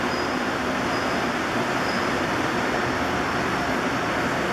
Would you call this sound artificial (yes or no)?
no